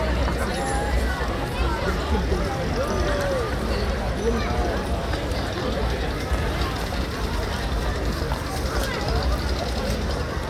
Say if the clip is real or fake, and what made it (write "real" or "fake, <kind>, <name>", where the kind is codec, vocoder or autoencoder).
real